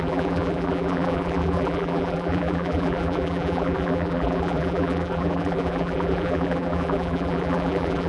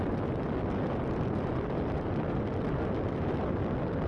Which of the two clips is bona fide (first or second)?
second